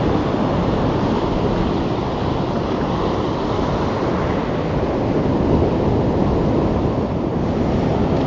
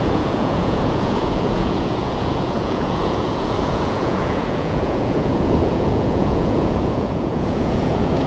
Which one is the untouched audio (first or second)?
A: first